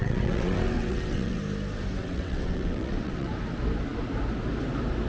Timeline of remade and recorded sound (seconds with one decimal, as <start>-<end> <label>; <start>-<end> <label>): 0.0-1.4 remade; 1.4-2.0 recorded; 2.0-3.3 remade; 3.3-5.1 recorded